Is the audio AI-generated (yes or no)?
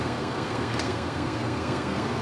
yes